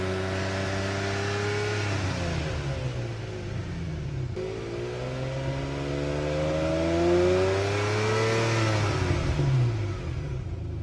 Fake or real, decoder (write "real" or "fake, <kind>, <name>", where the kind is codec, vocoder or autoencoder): real